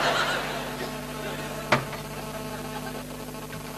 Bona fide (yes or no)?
yes